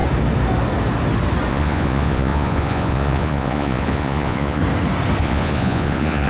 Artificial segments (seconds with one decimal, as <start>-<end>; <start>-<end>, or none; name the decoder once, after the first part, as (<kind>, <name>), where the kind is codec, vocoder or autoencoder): 1.5-4.6 (vocoder, Vocos); 5.2-6.3

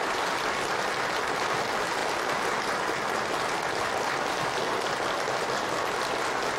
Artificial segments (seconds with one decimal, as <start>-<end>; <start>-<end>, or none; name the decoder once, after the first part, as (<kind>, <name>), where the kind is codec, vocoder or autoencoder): none

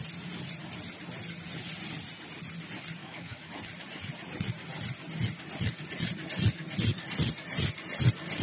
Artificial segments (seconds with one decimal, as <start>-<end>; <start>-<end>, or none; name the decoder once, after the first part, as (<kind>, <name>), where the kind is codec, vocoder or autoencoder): 3.0-3.5 (autoencoder, DAC-VAE)

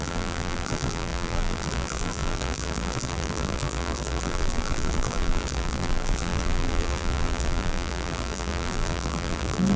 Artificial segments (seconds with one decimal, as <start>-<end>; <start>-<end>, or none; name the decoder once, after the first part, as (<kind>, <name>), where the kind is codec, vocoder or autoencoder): 0.0-9.8 (vocoder, BigVGAN v2)

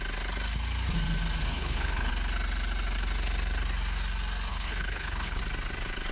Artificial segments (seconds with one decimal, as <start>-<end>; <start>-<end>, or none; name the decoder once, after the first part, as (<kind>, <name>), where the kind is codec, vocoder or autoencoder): 1.4-2.1 (codec, HILCodec); 4.5-5.4

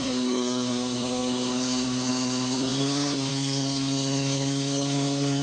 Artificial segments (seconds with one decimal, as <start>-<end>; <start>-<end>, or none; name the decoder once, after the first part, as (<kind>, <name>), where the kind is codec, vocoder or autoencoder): 0.0-5.4 (codec, SNAC)